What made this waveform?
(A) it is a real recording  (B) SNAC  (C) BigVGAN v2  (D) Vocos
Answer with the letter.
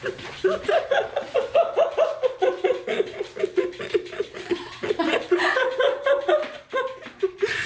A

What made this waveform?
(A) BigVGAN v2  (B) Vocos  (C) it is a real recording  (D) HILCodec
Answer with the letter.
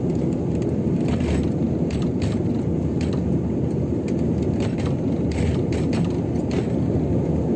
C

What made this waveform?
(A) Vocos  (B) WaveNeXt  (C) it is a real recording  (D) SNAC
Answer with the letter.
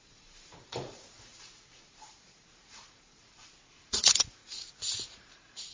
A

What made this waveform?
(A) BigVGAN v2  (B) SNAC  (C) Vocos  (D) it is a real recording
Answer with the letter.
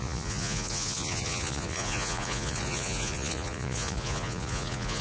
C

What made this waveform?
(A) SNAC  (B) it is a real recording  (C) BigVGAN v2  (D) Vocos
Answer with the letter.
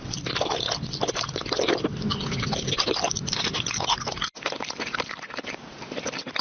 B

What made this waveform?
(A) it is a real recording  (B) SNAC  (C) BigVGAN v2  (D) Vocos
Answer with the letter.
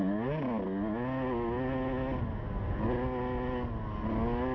A